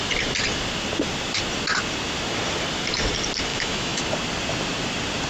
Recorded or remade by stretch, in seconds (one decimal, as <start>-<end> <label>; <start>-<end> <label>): 0.0-3.5 recorded; 3.5-4.0 remade; 4.0-5.3 recorded